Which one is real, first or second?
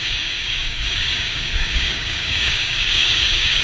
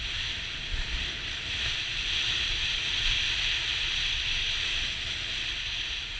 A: second